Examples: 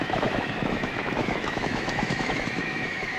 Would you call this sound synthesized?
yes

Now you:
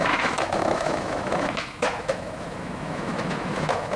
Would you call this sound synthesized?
yes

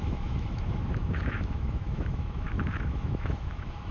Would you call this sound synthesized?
yes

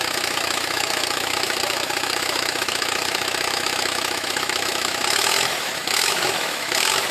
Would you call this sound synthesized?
yes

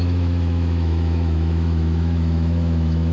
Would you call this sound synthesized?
yes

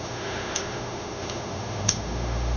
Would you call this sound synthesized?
yes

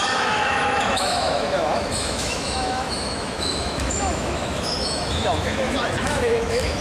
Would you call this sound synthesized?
yes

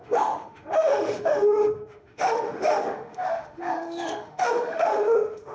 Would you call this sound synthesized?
yes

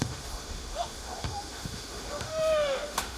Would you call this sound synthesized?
yes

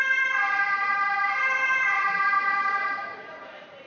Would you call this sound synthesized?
no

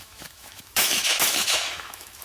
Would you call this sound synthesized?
yes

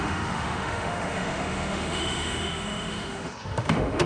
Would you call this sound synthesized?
yes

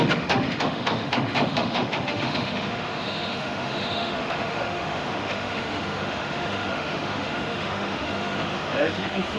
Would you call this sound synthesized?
yes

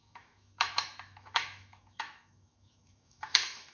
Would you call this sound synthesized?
yes